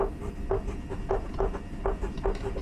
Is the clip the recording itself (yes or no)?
yes